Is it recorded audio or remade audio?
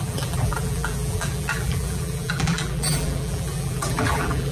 remade